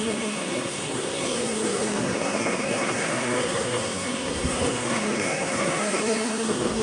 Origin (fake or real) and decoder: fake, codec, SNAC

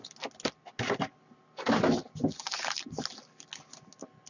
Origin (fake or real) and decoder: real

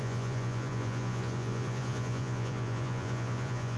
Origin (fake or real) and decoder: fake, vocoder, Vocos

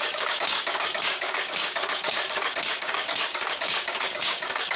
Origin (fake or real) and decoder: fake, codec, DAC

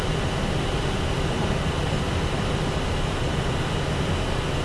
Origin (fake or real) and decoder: real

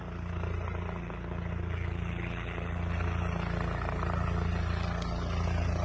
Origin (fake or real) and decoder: real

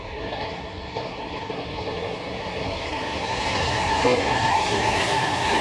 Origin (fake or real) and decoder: fake, codec, SNAC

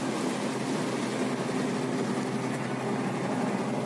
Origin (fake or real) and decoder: real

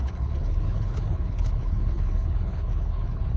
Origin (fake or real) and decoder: fake, codec, HILCodec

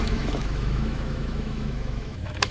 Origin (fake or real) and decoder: fake, autoencoder, DAC-VAE